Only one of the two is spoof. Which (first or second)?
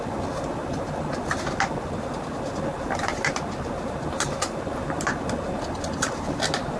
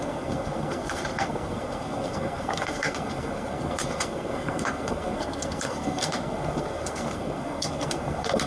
second